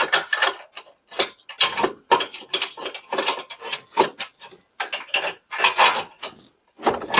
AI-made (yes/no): no